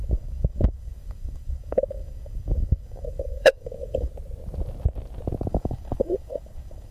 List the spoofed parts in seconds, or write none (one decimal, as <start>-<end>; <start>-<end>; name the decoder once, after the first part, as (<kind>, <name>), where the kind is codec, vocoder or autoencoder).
0.0-4.1 (codec, DAC); 5.5-6.9